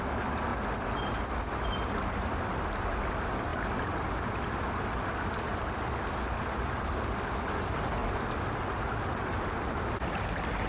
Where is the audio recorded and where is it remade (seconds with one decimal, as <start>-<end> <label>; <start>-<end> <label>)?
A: 0.0-10.7 recorded